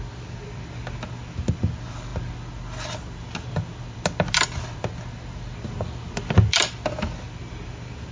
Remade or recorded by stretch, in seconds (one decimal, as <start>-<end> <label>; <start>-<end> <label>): 0.0-8.1 recorded